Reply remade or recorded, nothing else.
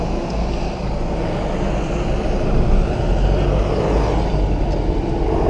recorded